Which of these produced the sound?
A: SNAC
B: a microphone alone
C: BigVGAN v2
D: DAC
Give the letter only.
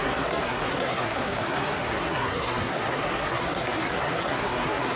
A